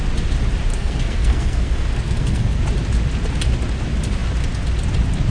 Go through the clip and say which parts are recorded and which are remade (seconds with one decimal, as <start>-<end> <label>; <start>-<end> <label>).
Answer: 0.0-0.7 recorded; 0.7-2.6 remade; 2.6-5.3 recorded